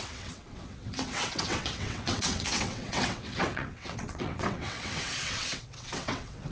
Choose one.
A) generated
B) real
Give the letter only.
A